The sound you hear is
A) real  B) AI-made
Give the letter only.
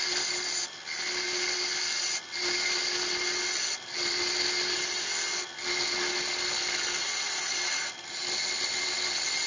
A